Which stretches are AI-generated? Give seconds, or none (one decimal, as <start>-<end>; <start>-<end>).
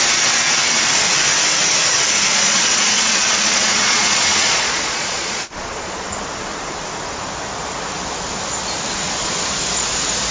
2.3-6.1